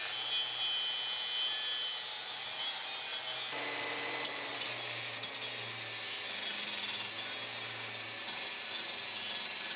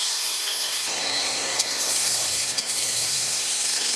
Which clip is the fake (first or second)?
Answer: second